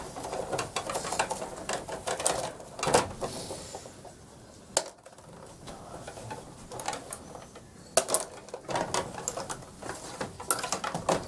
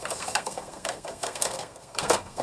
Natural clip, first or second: first